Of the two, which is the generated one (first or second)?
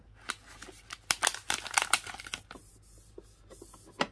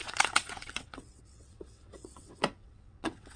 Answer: second